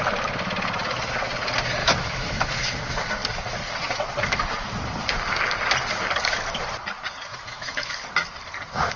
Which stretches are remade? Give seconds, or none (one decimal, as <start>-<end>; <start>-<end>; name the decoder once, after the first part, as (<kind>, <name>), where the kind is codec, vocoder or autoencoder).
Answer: 1.8-2.5 (autoencoder, DAC-VAE); 7.3-7.9